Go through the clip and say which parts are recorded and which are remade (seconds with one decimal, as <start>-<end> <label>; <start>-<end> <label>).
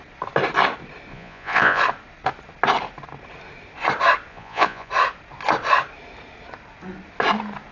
0.0-1.1 recorded; 1.1-1.8 remade; 1.8-4.3 recorded; 4.3-4.9 remade; 4.9-7.7 recorded